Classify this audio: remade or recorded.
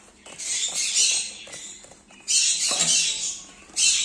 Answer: recorded